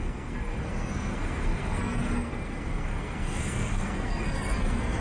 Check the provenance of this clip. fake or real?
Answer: fake